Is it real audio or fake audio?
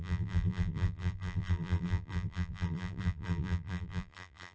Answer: fake